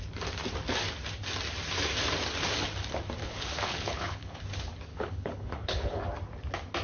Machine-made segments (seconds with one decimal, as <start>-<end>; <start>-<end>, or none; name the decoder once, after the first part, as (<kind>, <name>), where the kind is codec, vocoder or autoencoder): 3.2-4.4 (codec, HILCodec); 4.9-6.0